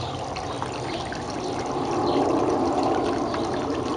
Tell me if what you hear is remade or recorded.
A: recorded